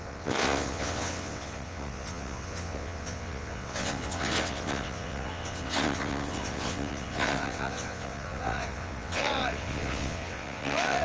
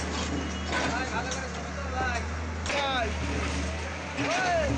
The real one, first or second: second